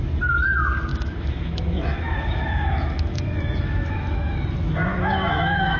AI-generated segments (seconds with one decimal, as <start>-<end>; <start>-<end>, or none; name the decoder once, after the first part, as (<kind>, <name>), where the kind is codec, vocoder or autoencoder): 0.9-4.4 (autoencoder, DAC-VAE); 4.9-5.8